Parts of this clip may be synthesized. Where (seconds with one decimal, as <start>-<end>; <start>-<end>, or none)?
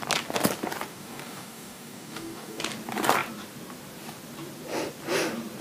0.9-2.6